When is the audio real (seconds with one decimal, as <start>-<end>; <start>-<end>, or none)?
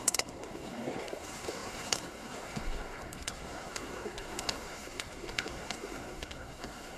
none